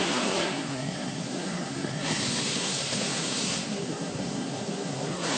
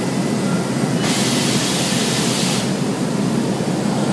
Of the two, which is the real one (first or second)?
second